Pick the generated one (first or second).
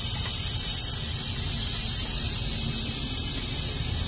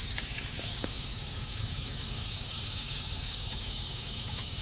second